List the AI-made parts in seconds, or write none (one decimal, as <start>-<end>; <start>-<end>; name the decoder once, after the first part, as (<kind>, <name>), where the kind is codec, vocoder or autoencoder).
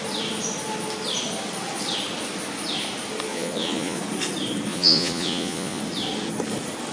3.3-4.0 (vocoder, Vocos); 4.7-5.8